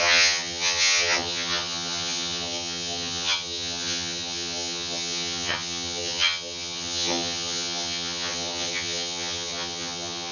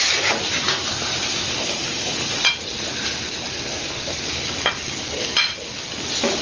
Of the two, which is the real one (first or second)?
second